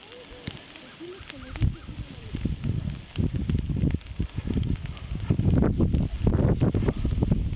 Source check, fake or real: real